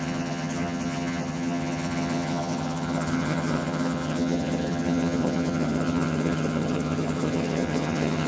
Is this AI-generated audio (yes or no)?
yes